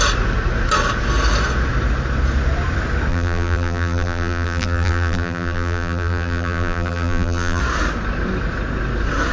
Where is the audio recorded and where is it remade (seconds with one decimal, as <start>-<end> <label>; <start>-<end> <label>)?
0.0-3.1 recorded; 3.1-7.6 remade; 7.6-9.3 recorded

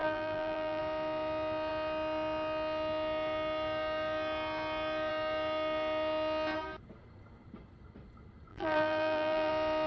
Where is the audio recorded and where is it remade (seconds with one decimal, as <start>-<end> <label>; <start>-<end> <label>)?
0.0-0.8 remade; 0.8-8.5 recorded; 8.5-9.5 remade; 9.5-9.9 recorded